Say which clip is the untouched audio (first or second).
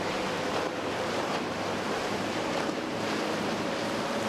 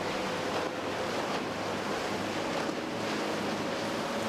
second